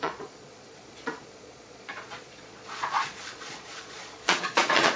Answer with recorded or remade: remade